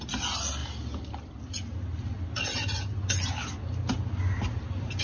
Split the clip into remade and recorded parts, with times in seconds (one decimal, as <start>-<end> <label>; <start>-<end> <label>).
0.0-5.0 recorded